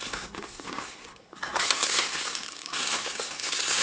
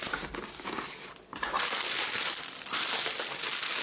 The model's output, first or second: first